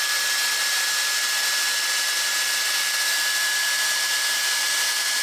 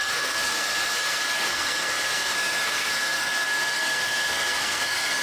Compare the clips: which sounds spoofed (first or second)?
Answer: second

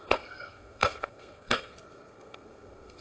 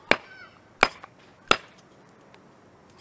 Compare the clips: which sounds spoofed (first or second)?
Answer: first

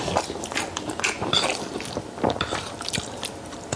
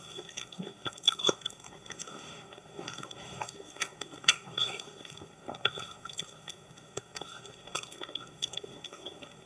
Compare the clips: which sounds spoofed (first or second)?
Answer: second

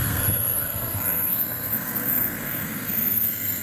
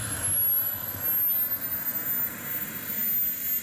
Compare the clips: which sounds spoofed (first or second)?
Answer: first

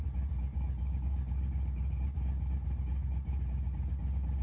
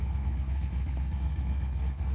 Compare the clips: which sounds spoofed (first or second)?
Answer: second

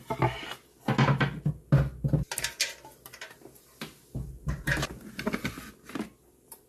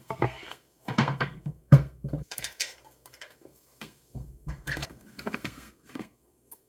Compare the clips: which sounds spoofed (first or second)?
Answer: second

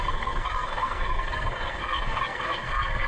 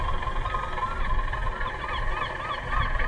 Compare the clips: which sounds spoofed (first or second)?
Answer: first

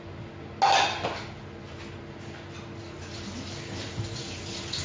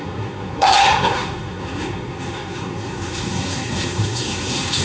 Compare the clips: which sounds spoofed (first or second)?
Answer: second